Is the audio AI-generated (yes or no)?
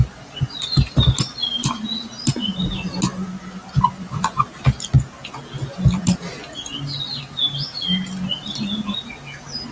no